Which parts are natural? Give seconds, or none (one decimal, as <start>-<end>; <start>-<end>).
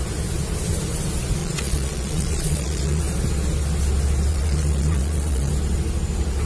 0.0-1.4; 3.0-4.3; 5.5-6.5